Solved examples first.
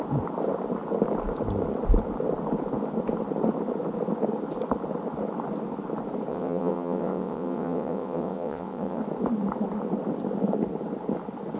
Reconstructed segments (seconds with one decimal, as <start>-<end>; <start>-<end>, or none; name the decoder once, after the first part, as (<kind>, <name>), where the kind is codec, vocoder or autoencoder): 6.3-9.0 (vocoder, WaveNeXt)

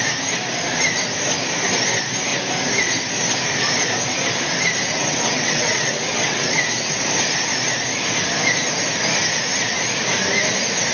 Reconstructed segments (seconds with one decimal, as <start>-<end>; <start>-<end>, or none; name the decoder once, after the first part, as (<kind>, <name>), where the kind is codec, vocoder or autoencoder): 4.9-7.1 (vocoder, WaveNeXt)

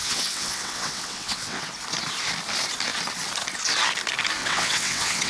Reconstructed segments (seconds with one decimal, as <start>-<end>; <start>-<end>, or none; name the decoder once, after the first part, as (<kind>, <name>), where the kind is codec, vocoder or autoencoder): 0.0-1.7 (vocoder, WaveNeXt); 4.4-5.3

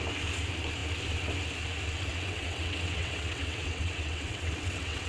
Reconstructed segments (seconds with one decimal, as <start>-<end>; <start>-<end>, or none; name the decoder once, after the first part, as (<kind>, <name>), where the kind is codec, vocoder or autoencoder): 2.1-5.1 (vocoder, WaveNeXt)

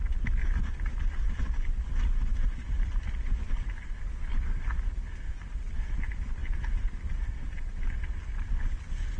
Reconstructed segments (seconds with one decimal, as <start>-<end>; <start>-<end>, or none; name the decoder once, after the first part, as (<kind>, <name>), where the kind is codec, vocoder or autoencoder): none